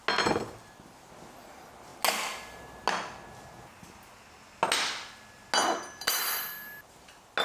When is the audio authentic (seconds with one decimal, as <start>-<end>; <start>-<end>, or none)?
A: 0.0-7.4